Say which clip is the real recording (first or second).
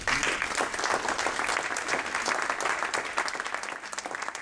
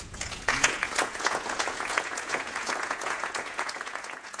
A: first